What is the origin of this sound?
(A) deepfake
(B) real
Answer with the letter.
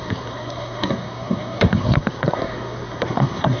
A